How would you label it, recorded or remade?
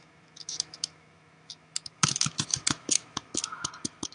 remade